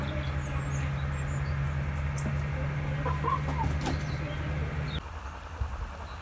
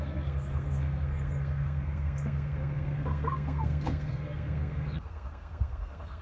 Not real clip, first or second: second